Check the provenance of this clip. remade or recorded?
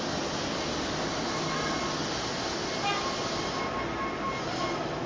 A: recorded